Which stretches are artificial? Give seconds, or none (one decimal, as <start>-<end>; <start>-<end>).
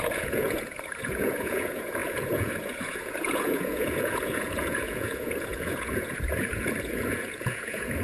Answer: 0.0-8.0